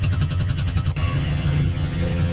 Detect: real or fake fake